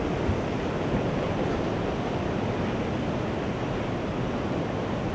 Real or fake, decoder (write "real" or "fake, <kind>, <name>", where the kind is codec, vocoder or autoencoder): real